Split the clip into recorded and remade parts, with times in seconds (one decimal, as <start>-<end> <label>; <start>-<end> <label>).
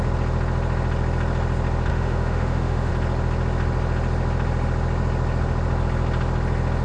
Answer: 0.0-1.9 recorded; 1.9-2.9 remade; 2.9-6.8 recorded